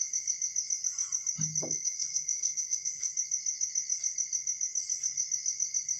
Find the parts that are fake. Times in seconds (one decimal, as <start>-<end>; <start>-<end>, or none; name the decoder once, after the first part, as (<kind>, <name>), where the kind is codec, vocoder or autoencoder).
1.6-3.1 (codec, SNAC)